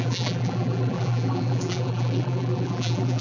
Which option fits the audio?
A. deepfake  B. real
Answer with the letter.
A